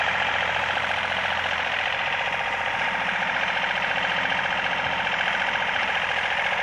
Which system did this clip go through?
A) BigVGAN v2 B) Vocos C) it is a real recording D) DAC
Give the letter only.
A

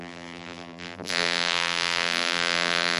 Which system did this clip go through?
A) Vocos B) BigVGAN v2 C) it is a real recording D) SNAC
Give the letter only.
B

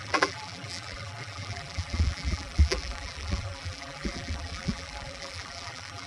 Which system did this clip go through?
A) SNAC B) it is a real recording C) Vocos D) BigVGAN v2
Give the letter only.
D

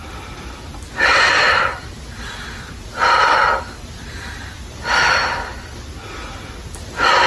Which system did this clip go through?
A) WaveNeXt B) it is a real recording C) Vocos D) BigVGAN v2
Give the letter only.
B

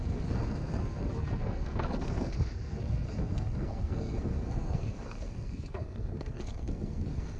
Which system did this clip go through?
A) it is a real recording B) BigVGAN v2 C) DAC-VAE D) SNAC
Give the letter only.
D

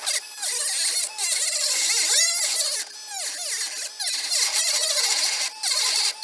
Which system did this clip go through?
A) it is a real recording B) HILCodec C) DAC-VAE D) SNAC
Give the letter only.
A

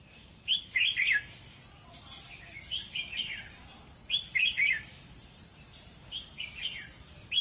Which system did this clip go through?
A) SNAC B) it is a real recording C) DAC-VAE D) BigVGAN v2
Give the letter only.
D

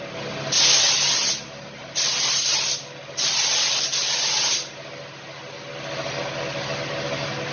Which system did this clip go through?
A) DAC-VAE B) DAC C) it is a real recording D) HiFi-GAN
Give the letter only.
C